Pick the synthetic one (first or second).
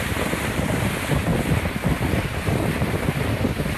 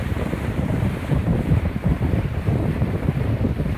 second